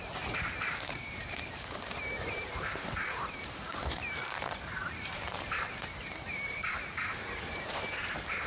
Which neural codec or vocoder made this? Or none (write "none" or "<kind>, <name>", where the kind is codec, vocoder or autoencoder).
vocoder, BigVGAN v2